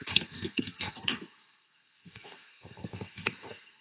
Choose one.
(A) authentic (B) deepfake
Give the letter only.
B